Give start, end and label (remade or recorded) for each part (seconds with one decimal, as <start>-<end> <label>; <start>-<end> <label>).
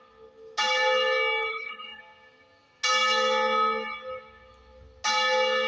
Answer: 0.0-1.5 recorded; 1.5-2.0 remade; 2.0-5.7 recorded